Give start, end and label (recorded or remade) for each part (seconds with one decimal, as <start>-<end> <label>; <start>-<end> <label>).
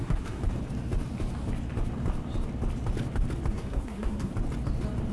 0.0-0.4 remade; 0.4-3.5 recorded; 3.5-4.3 remade; 4.3-5.1 recorded